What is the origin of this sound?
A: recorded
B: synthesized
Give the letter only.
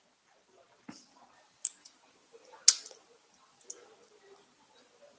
A